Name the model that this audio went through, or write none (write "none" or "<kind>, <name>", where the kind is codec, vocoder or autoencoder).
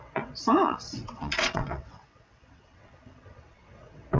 vocoder, WaveNeXt